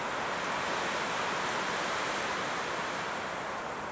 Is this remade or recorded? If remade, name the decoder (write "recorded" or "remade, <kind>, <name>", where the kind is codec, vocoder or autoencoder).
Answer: recorded